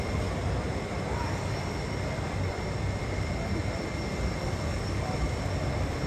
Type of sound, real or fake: fake